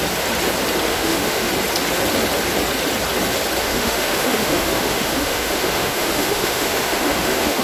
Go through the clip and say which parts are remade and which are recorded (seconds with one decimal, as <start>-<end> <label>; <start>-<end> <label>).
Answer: 0.0-0.9 recorded; 0.9-1.5 remade; 1.5-3.6 recorded; 3.6-7.6 remade